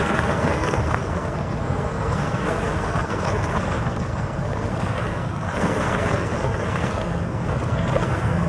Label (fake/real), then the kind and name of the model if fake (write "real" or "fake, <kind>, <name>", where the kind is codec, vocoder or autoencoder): fake, codec, SNAC